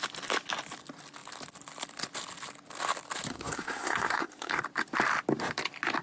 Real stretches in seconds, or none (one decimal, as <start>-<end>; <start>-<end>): 0.0-3.3; 4.6-6.0